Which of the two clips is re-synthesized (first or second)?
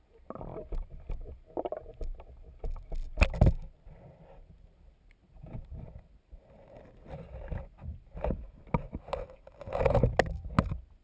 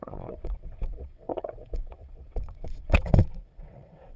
second